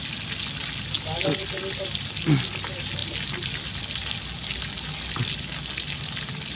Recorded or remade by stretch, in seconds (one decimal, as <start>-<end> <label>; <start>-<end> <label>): 0.0-6.6 recorded